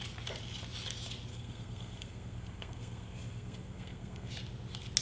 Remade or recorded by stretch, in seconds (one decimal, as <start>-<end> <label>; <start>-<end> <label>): 0.0-1.3 recorded; 1.3-4.3 remade; 4.3-5.0 recorded